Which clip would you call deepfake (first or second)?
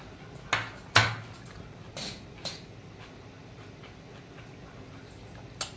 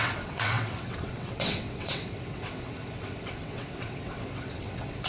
second